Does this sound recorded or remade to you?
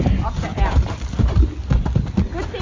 recorded